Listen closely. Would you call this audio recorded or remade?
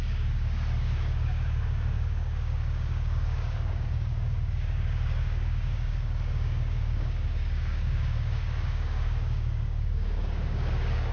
remade